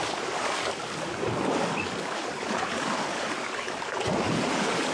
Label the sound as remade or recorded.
remade